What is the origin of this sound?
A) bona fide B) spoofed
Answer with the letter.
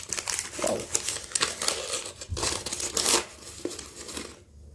A